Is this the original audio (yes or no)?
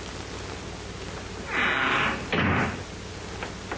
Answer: yes